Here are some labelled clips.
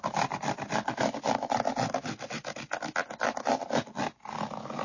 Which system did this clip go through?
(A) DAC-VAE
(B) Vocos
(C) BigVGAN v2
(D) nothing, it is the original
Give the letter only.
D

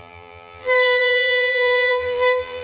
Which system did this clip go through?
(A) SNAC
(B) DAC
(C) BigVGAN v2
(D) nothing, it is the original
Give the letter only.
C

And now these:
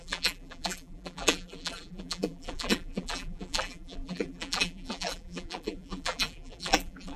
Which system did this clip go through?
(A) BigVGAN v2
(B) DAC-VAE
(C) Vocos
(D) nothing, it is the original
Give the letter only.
A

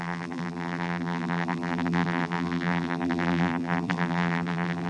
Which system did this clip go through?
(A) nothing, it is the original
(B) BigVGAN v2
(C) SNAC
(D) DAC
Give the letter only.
B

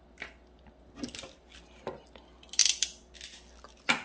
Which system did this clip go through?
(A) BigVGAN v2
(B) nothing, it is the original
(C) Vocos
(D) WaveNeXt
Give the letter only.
B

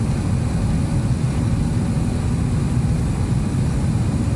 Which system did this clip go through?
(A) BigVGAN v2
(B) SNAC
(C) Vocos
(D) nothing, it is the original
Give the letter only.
D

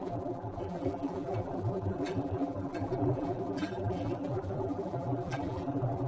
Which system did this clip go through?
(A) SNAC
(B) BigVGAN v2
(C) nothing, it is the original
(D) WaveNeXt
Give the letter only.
B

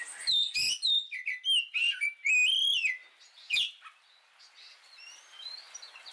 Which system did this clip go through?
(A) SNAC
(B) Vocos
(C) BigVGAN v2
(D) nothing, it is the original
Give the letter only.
D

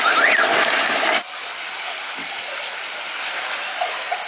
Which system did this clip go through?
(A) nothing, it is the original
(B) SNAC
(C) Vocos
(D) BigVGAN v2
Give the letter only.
A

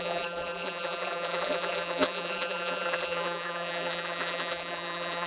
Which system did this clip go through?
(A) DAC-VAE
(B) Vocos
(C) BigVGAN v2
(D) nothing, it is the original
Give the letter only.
C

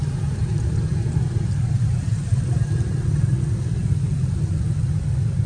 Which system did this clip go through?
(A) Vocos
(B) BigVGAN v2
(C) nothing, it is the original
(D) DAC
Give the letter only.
C